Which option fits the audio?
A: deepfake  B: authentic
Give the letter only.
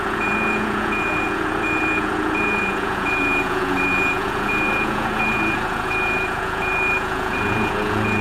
A